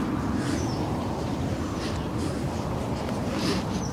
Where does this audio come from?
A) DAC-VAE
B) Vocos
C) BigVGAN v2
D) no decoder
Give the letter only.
D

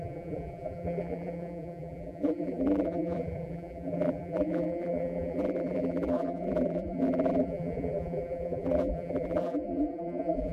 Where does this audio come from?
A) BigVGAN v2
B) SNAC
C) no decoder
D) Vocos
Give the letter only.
A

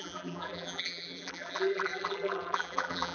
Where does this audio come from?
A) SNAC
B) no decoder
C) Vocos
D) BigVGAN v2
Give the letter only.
D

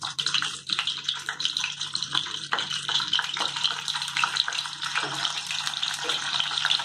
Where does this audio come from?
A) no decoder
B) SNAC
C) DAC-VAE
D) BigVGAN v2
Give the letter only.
D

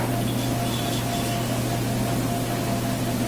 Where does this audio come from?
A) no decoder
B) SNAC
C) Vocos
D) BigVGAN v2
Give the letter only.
A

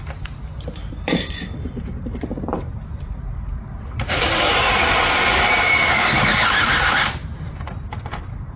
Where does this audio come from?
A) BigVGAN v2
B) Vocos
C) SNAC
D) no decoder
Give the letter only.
A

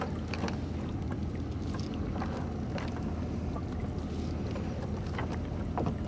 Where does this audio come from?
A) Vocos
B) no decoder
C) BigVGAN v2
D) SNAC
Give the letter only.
B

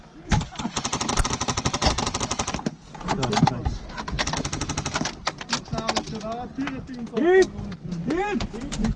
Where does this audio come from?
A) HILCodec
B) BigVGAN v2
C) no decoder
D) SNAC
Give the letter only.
C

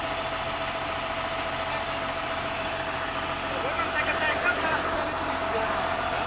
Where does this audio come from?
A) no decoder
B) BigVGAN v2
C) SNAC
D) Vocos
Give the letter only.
A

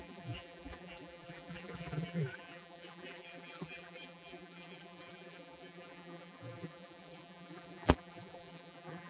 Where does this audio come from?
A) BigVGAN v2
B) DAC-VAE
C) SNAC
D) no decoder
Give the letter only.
A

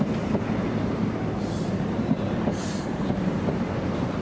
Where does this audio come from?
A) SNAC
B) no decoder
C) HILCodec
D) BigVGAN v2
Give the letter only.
D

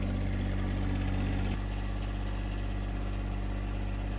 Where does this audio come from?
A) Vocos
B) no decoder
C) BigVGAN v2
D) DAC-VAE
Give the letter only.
B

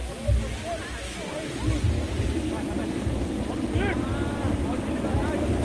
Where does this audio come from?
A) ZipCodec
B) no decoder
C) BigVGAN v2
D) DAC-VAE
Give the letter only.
B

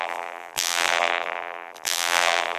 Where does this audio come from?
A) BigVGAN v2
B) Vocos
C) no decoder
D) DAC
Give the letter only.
A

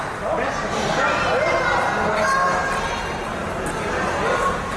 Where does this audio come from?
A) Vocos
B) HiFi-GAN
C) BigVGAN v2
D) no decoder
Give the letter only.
D